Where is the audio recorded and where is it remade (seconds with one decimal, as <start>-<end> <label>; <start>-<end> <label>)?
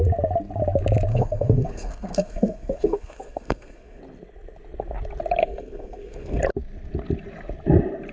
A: 0.0-1.1 recorded; 1.1-4.0 remade; 4.0-5.4 recorded; 5.4-6.4 remade; 6.4-8.1 recorded